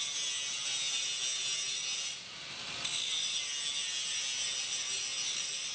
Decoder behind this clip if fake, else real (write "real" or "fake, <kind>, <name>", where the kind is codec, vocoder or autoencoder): real